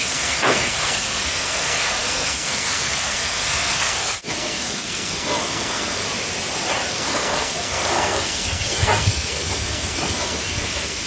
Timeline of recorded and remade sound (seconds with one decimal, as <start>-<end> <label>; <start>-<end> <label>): 0.0-6.0 remade; 6.0-6.9 recorded; 6.9-11.1 remade